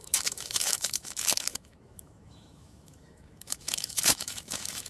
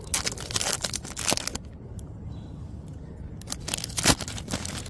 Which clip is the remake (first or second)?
first